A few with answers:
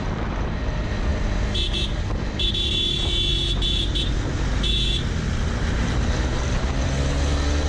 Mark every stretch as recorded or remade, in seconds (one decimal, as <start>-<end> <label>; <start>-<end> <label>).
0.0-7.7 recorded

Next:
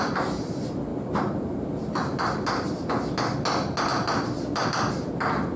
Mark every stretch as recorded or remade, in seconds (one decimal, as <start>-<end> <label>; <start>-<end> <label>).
0.0-0.9 recorded; 0.9-1.8 remade; 1.8-5.6 recorded

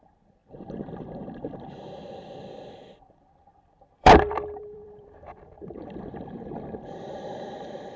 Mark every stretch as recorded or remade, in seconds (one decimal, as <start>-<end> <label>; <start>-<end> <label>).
0.0-8.0 remade